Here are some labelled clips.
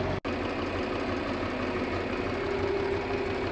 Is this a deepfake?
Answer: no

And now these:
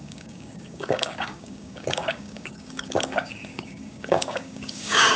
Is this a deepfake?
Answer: yes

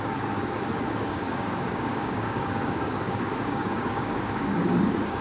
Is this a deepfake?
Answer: yes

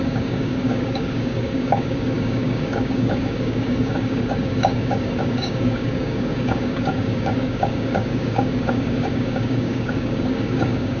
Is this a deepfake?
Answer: yes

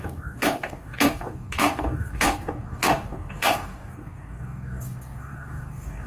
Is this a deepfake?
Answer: yes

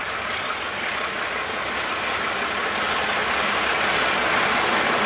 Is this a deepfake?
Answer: no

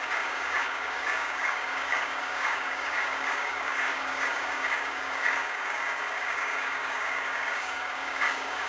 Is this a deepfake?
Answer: yes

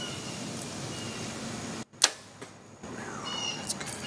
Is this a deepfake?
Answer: no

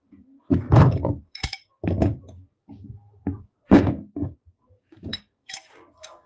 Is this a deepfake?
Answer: yes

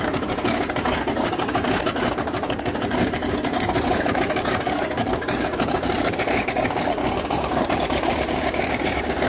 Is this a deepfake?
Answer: yes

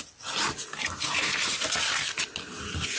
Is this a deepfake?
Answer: no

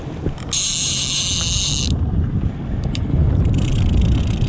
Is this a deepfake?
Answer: no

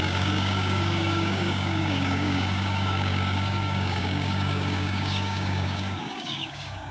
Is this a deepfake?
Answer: yes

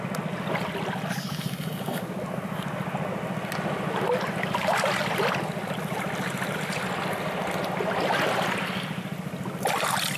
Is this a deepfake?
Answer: no